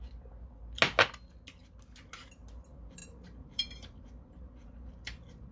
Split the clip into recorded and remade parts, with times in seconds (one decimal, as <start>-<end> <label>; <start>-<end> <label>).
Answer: 0.0-3.0 recorded; 3.0-5.5 remade